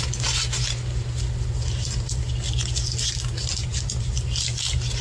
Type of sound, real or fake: real